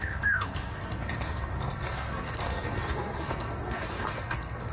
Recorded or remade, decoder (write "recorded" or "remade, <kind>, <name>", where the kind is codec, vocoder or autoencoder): remade, codec, SNAC